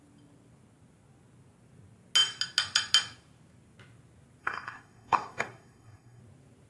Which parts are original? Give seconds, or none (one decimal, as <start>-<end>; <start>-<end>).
0.0-4.4; 6.2-6.7